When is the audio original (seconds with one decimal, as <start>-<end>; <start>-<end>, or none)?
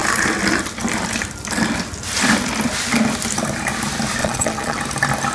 0.0-4.2; 4.8-5.3